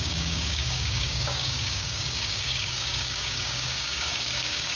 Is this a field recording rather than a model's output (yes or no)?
no